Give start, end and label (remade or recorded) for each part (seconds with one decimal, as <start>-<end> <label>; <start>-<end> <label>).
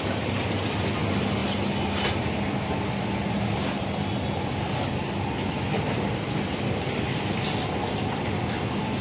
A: 0.0-9.0 recorded